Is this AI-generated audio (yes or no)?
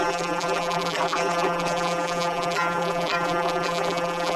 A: yes